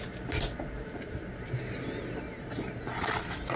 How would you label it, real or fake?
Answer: real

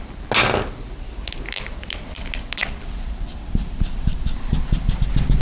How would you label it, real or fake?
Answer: real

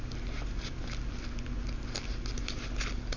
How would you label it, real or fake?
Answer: real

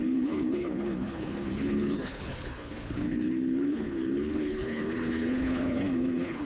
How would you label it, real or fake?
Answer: fake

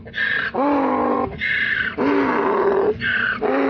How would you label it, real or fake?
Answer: real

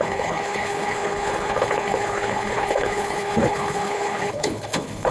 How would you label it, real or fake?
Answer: fake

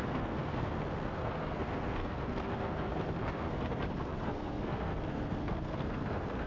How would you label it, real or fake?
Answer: fake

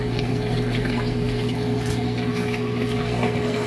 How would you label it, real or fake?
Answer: fake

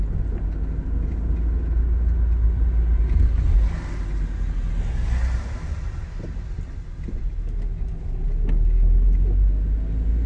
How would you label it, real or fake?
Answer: real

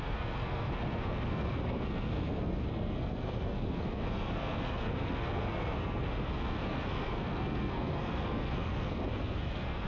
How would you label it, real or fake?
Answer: fake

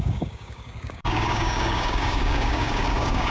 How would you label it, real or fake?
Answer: fake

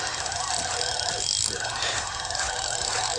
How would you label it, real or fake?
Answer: real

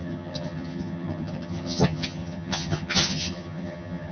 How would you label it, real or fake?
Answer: fake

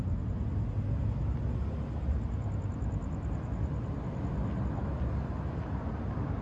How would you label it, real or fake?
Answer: real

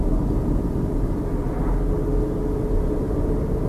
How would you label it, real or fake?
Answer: real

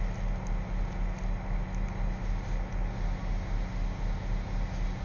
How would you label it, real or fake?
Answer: real